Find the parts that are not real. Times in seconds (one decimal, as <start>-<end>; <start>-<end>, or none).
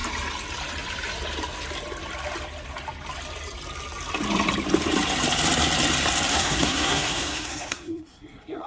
6.3-8.7